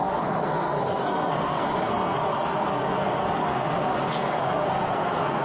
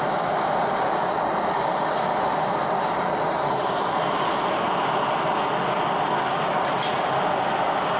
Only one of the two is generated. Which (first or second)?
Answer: first